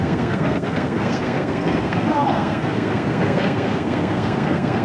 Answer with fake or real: fake